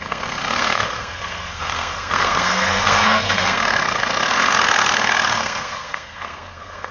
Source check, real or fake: fake